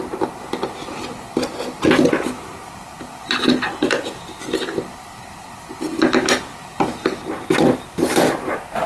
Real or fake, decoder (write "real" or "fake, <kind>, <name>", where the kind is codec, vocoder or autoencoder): real